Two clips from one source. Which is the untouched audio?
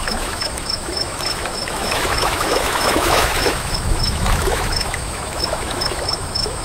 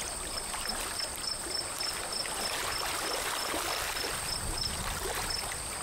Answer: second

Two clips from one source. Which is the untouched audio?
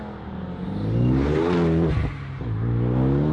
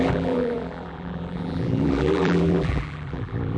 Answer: first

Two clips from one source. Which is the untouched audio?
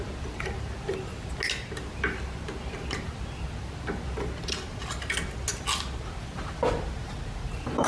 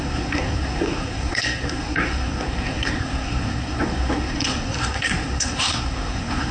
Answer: first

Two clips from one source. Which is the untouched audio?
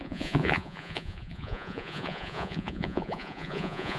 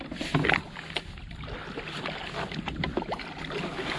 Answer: second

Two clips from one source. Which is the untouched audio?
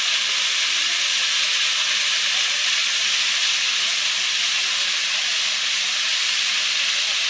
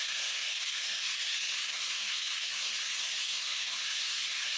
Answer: first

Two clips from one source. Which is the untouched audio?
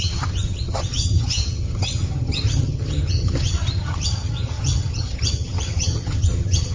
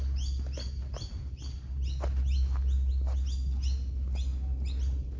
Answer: second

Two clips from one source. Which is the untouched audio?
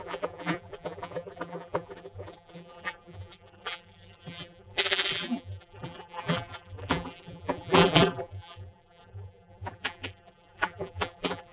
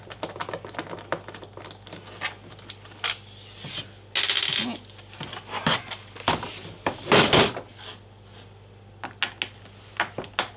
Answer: second